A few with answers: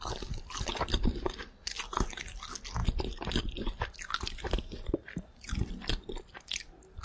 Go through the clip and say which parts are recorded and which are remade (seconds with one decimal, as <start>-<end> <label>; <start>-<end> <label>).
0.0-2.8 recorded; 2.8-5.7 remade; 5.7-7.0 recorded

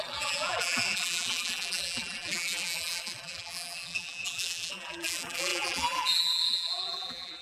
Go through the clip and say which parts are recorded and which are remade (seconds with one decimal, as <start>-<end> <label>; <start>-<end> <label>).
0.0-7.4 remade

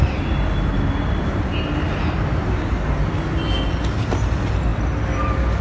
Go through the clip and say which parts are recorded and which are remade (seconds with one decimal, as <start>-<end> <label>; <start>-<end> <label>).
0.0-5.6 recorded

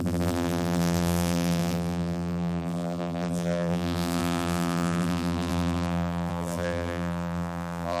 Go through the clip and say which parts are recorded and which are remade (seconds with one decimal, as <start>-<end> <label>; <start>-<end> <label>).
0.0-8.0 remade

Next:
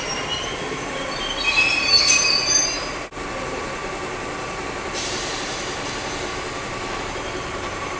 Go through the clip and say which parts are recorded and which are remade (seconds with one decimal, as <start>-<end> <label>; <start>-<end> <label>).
0.0-2.6 remade; 2.6-3.4 recorded; 3.4-6.3 remade; 6.3-7.0 recorded; 7.0-8.0 remade

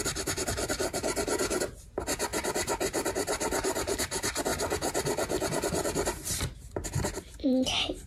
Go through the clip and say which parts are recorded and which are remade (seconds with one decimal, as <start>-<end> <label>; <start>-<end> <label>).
0.0-4.5 remade; 4.5-6.4 recorded; 6.4-8.1 remade

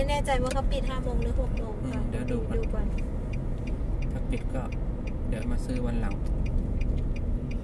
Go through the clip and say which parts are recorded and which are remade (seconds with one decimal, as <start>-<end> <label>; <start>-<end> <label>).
0.0-7.6 recorded

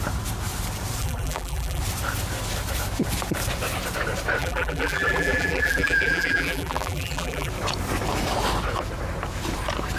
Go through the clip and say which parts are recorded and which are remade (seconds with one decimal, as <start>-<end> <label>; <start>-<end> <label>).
0.0-1.0 recorded; 1.0-1.8 remade; 1.8-4.4 recorded; 4.4-7.5 remade; 7.5-10.0 recorded